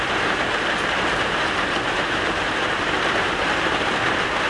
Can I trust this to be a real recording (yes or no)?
no